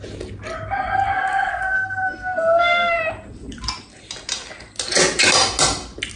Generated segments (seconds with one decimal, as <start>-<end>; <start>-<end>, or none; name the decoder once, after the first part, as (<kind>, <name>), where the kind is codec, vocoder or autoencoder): 1.1-3.0 (codec, SNAC)